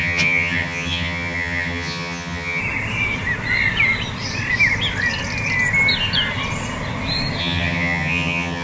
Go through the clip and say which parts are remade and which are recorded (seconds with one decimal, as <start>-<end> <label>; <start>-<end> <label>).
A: 0.0-2.6 remade; 2.6-7.4 recorded; 7.4-8.6 remade